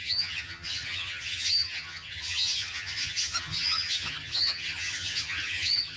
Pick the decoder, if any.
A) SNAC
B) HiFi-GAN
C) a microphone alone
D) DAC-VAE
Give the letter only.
B